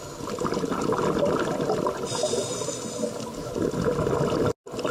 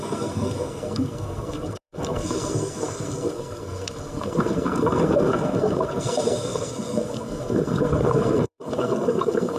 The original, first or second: first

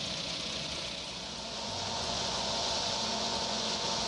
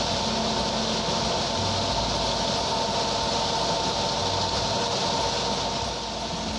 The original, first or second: second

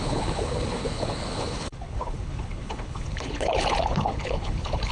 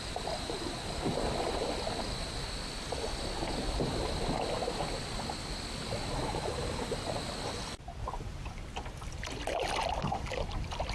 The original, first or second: second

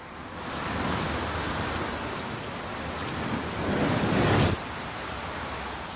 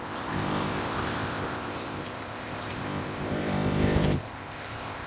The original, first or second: first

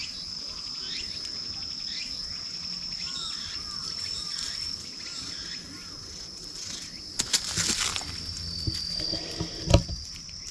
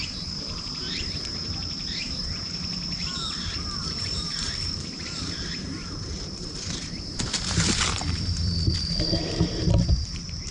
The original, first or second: first